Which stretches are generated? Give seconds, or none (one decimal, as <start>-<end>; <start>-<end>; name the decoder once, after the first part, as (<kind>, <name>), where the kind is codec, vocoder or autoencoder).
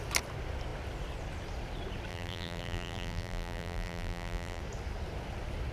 2.1-4.6 (vocoder, BigVGAN v2)